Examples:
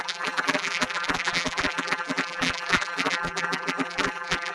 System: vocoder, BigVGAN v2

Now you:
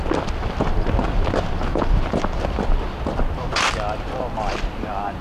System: none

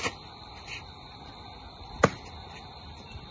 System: none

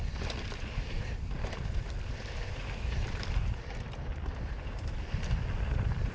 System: vocoder, BigVGAN v2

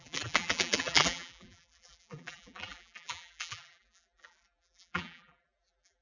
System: vocoder, BigVGAN v2